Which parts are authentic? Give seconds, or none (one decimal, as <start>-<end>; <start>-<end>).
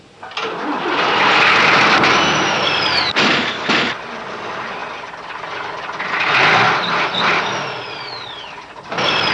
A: 0.0-9.3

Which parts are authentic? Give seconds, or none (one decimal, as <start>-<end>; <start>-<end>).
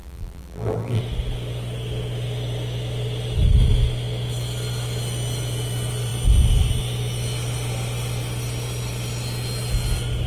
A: 1.0-10.3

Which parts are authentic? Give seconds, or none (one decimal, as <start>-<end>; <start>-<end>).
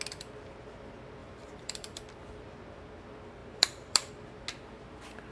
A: 0.0-1.2; 2.6-3.4; 4.1-5.3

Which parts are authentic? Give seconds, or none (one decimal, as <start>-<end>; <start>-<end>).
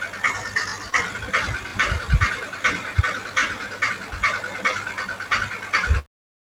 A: 0.0-1.7; 3.0-3.4; 3.9-6.5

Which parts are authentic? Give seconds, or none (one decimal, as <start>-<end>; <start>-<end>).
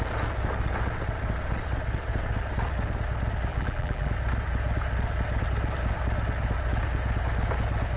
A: 0.0-3.5; 4.1-8.0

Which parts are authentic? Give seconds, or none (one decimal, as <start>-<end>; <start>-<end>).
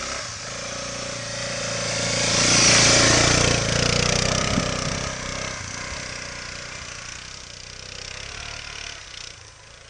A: 0.0-9.9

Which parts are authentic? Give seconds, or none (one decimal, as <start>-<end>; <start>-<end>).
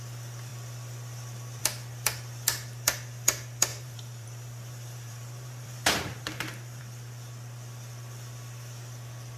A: 0.0-3.7; 6.8-9.4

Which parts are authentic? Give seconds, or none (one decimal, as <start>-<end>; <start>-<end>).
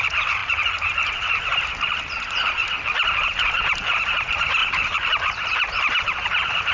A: none